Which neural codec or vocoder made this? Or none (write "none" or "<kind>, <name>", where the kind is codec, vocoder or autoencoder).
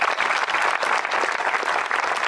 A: none